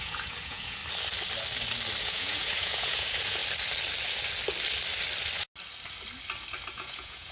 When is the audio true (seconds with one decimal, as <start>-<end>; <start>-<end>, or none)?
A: 0.8-2.0; 3.4-6.7